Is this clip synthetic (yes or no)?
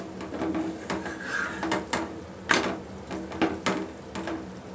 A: no